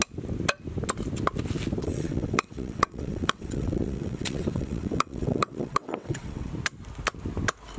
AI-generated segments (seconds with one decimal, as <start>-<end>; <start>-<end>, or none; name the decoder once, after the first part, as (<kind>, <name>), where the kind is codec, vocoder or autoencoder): 1.8-6.5 (vocoder, WaveNeXt)